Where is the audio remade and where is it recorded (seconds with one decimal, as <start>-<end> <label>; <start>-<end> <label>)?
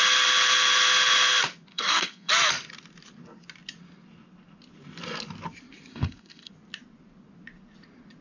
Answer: 0.0-1.7 recorded; 1.7-2.3 remade; 2.3-5.9 recorded; 5.9-6.5 remade; 6.5-8.2 recorded